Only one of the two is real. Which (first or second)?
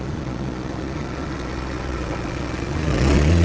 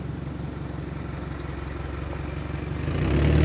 second